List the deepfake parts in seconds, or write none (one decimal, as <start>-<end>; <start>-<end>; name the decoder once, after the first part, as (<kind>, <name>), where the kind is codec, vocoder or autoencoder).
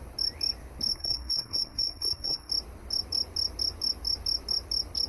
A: 0.9-2.5 (codec, SNAC)